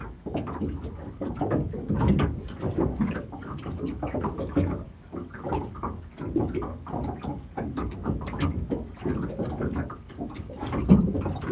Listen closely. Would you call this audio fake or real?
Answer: fake